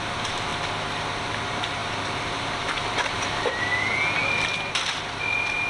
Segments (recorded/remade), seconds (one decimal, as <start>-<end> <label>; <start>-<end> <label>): 0.0-0.5 remade; 0.5-1.2 recorded; 1.2-3.7 remade; 3.7-5.7 recorded